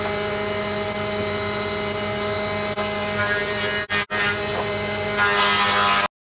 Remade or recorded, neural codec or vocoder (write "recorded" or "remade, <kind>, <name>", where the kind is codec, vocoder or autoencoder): recorded